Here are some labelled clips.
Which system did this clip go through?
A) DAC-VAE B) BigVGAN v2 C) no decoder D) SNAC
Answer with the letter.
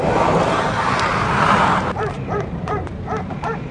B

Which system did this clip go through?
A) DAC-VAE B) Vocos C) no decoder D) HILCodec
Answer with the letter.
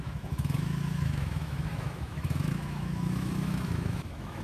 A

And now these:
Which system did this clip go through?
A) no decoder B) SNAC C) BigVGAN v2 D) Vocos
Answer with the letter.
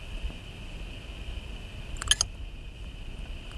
A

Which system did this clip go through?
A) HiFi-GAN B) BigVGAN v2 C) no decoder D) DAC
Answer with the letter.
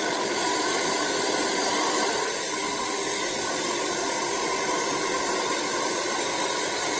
C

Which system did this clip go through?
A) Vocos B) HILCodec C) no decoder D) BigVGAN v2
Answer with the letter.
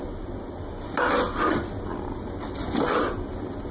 C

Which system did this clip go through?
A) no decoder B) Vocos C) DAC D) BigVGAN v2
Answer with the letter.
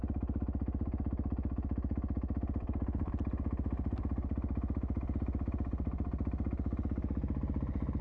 A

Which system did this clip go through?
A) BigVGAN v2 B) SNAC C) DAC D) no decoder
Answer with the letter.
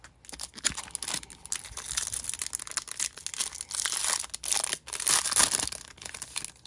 D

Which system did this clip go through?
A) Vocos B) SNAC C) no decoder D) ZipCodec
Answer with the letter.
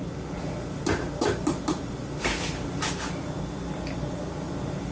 C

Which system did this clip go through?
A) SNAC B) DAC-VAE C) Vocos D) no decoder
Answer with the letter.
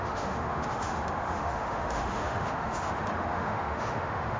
B